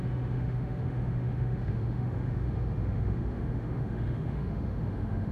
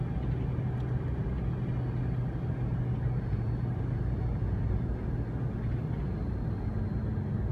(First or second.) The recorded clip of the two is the second